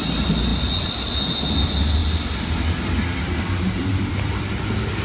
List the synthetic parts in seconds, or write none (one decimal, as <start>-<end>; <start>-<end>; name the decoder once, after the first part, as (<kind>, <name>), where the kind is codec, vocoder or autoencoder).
none